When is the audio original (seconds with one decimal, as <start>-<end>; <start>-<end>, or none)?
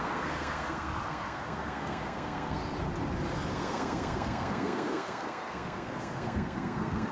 2.6-3.5